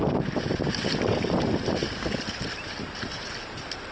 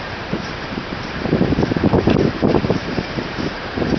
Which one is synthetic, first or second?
second